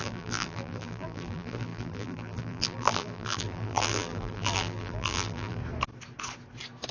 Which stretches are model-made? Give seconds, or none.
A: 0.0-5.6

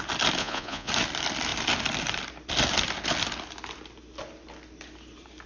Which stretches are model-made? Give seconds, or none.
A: 0.4-0.9

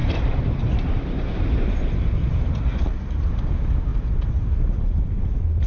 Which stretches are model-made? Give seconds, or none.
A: 0.0-3.4; 3.9-5.1

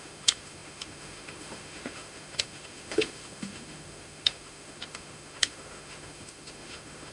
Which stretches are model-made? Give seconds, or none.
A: 0.0-7.1

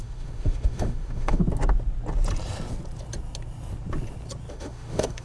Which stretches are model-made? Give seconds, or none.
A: 0.0-1.4; 4.5-5.2

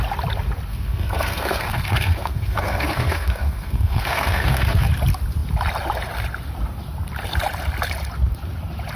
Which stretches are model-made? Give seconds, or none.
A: 0.7-4.9